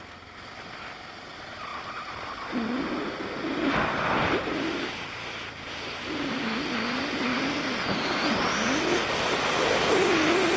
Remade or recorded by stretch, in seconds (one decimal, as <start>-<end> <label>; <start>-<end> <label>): 0.0-10.6 recorded